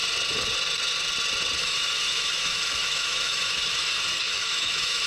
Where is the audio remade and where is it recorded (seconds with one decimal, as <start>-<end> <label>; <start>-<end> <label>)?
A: 0.0-1.6 recorded; 1.6-5.1 remade